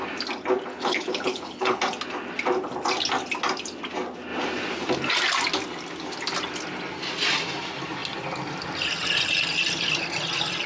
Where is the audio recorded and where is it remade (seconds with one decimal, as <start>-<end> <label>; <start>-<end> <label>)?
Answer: 0.0-0.7 recorded; 0.7-1.8 remade; 1.8-10.7 recorded